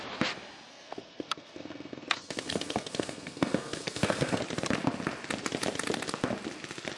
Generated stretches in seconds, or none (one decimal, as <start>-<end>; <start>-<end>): 0.7-4.4